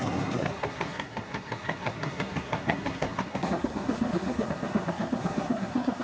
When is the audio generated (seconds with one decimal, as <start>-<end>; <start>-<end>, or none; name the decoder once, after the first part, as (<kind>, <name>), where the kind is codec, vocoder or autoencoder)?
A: 0.0-6.0 (codec, SNAC)